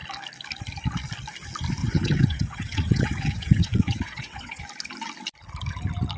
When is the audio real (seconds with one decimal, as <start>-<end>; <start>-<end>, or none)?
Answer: 0.0-1.8; 4.6-6.2